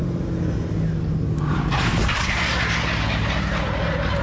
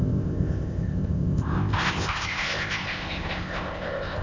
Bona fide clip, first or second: first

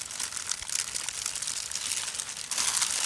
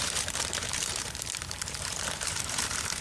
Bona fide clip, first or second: first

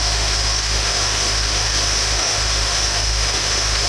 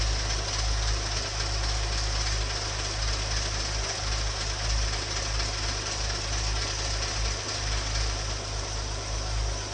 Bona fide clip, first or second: second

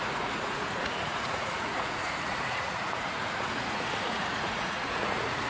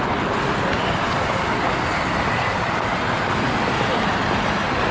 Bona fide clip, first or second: second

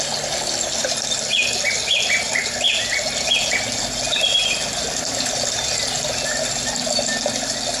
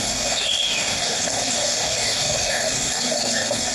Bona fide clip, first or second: first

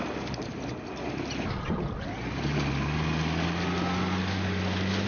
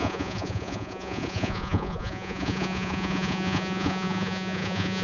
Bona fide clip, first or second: first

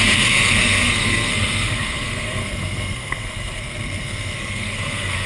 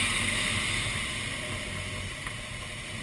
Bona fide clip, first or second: second